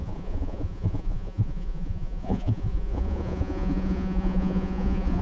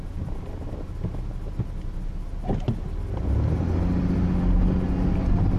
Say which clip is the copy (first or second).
first